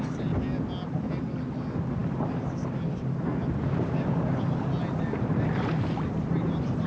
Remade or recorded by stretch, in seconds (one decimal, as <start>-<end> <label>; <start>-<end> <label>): 0.0-6.9 recorded

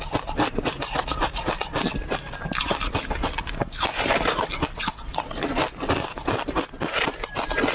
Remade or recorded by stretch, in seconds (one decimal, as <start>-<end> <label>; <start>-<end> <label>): 0.0-7.7 recorded